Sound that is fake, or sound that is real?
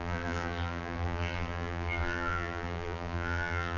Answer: fake